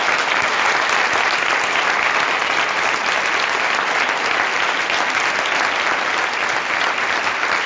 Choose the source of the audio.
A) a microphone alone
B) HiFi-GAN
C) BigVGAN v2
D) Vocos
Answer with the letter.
A